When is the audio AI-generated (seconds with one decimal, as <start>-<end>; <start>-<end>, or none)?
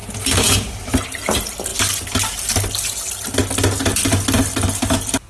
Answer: none